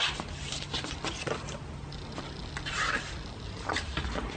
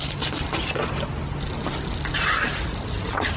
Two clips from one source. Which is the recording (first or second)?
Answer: second